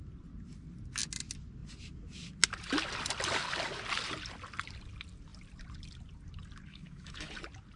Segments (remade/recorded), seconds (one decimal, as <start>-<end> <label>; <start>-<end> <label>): 0.0-6.7 recorded; 6.7-7.3 remade; 7.3-7.8 recorded